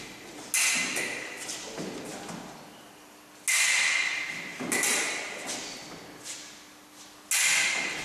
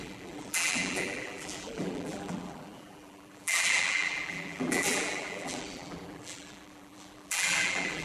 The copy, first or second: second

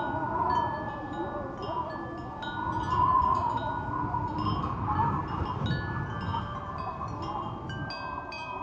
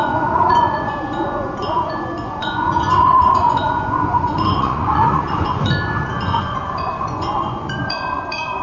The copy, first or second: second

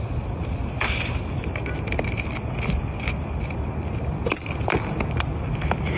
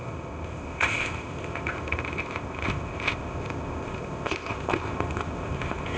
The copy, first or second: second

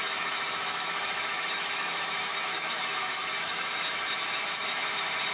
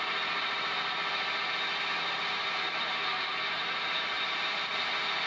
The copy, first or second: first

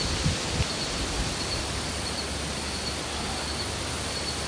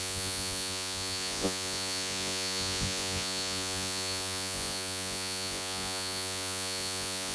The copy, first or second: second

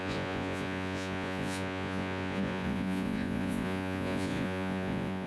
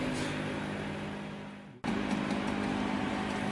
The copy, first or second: first